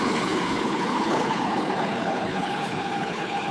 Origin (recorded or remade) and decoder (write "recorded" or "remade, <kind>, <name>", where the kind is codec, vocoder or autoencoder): remade, codec, HILCodec